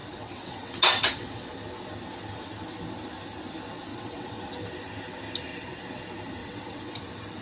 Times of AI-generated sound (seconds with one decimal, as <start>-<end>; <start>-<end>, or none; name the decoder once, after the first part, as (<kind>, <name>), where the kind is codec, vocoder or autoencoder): 0.0-1.5 (vocoder, WaveNeXt); 3.9-4.4; 5.5-6.0; 6.4-6.9